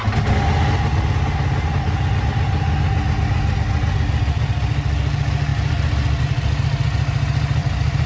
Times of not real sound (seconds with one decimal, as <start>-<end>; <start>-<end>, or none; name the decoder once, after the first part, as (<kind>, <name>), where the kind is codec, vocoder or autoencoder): 7.6-8.1 (vocoder, BigVGAN v2)